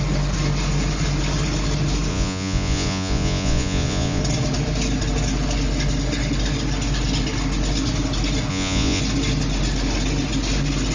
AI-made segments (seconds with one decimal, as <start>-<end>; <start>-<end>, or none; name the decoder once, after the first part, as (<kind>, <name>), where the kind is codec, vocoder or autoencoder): 2.1-4.2 (vocoder, Vocos); 8.5-9.0

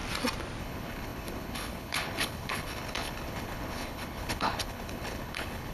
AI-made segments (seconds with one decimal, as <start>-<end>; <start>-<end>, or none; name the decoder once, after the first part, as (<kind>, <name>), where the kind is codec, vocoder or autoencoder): 0.6-5.7 (codec, HILCodec)

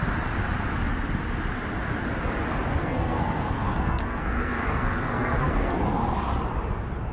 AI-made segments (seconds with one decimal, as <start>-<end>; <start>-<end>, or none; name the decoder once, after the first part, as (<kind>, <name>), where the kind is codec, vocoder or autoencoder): 2.8-5.8 (codec, SNAC)

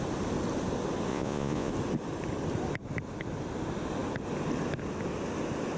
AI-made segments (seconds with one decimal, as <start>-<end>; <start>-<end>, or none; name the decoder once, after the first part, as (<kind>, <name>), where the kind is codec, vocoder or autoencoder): 1.1-1.7 (vocoder, Vocos)